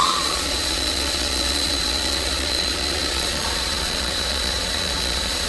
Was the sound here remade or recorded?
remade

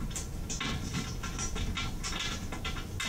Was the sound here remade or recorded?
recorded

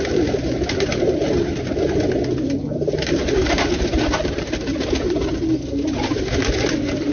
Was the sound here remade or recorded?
recorded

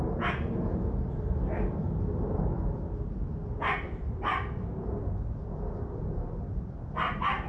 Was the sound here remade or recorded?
recorded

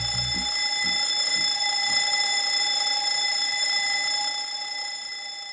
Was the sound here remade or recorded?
recorded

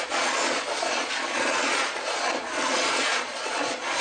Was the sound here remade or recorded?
remade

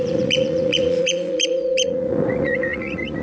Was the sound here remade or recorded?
remade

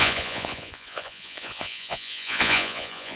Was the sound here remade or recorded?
remade